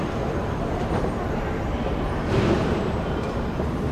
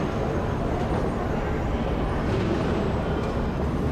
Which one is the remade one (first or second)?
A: first